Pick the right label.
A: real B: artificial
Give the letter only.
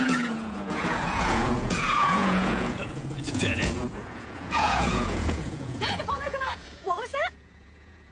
B